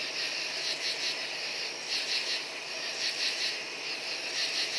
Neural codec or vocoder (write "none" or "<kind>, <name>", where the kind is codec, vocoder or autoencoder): none